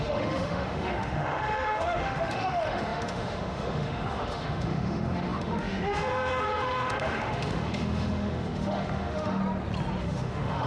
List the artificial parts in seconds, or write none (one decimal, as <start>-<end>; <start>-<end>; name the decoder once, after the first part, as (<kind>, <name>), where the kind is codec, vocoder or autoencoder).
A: 0.0-9.4 (autoencoder, DAC-VAE); 10.0-10.7